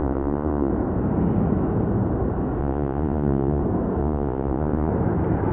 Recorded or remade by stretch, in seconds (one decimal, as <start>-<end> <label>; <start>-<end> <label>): 0.0-0.7 remade; 0.7-2.6 recorded; 2.6-3.6 remade; 3.6-4.0 recorded; 4.0-4.9 remade; 4.9-5.5 recorded